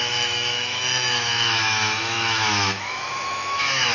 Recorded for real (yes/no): no